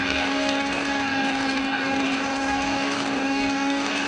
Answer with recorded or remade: remade